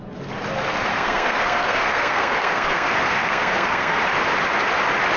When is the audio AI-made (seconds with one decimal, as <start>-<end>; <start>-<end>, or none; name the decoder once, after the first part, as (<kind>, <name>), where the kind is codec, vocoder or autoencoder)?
0.9-4.0 (codec, SNAC)